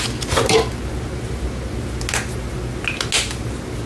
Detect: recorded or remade recorded